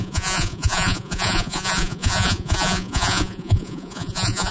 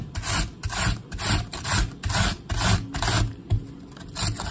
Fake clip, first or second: first